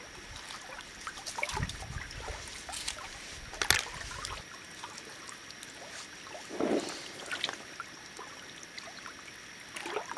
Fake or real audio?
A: real